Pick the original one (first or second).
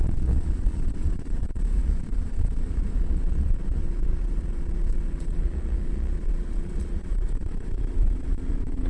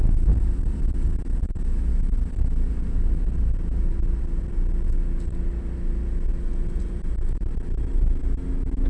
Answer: second